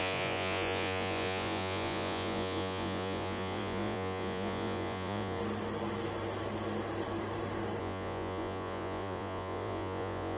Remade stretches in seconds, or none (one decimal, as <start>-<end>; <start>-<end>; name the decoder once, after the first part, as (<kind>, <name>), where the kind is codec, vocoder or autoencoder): 0.0-5.4 (vocoder, Vocos); 7.8-10.4